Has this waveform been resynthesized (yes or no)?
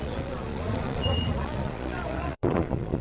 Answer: yes